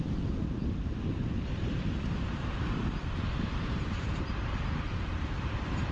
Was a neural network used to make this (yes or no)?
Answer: yes